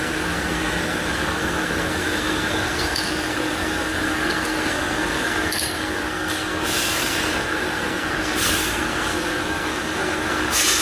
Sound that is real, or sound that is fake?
fake